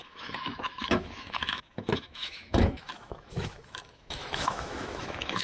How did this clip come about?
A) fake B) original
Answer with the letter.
A